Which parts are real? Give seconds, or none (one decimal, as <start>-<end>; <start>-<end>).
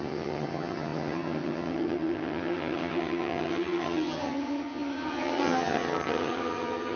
none